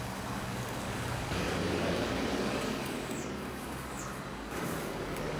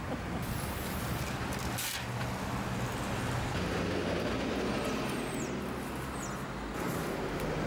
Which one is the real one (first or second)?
second